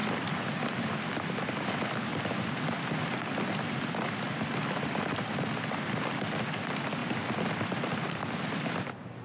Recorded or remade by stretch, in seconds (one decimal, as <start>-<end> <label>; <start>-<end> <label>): 0.0-7.0 remade; 7.0-7.5 recorded; 7.5-9.2 remade